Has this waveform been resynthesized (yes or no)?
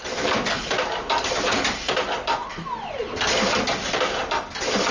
no